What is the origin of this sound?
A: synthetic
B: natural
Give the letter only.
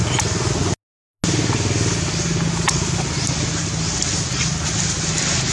B